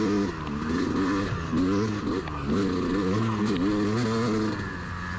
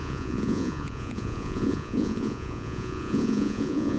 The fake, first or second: second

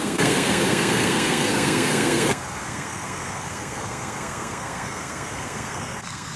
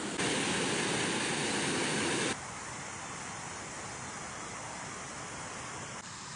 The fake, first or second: first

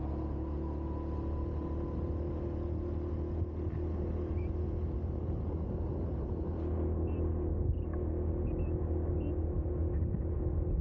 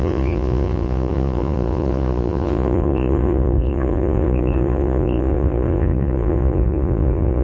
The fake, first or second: second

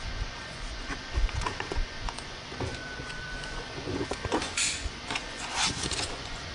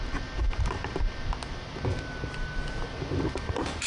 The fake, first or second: first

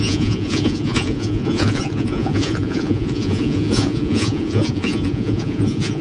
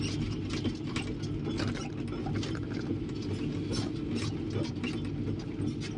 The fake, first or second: first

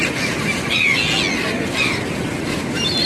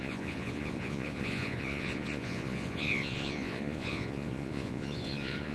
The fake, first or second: second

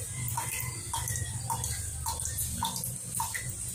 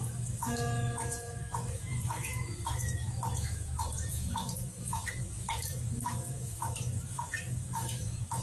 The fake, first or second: second